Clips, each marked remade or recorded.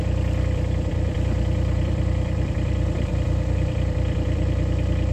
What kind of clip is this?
remade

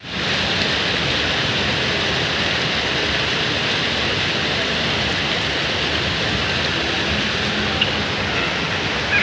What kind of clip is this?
recorded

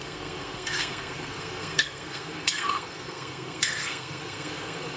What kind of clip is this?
remade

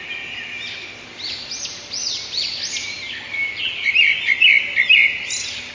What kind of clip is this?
recorded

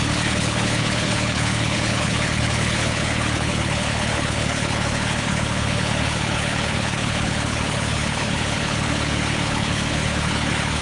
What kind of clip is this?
remade